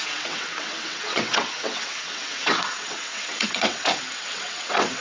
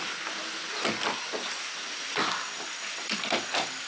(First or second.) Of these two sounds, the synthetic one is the first